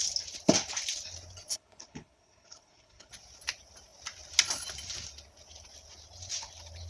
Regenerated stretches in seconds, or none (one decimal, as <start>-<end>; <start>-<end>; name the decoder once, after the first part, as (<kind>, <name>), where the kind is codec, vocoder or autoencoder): 1.5-3.1 (codec, HILCodec)